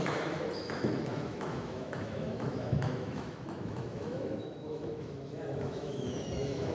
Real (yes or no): no